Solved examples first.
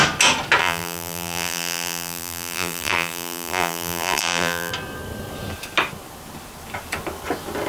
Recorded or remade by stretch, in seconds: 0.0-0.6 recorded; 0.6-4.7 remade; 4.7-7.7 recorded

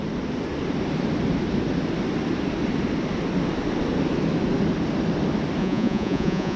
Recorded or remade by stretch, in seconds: 0.0-5.6 recorded; 5.6-6.6 remade

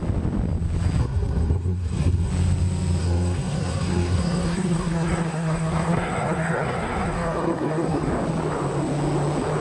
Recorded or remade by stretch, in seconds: 0.0-1.0 recorded; 1.0-2.3 remade; 2.3-3.0 recorded; 3.0-8.1 remade; 8.1-9.6 recorded

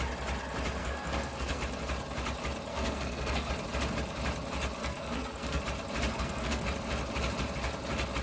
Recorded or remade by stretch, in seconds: 0.0-0.8 recorded; 0.8-1.6 remade; 1.6-2.7 recorded; 2.7-3.5 remade; 3.5-4.8 recorded; 4.8-5.6 remade; 5.6-6.1 recorded; 6.1-6.7 remade; 6.7-8.2 recorded